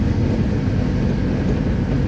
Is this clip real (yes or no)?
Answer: yes